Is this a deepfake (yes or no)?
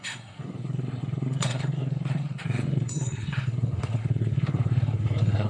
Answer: yes